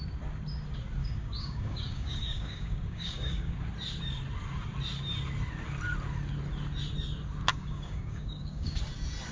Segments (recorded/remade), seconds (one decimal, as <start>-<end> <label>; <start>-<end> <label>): 0.0-1.0 recorded; 1.0-3.5 remade; 3.5-7.5 recorded; 7.5-8.8 remade; 8.8-9.3 recorded